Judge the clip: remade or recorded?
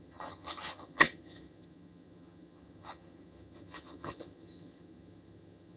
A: remade